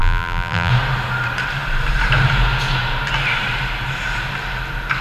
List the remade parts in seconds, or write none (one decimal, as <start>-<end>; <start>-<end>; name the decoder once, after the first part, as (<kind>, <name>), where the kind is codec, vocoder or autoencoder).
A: 0.0-0.7 (vocoder, BigVGAN v2)